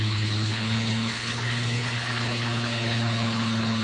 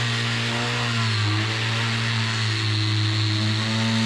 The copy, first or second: first